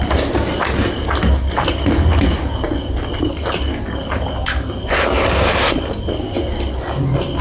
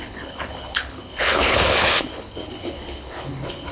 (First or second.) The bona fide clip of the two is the first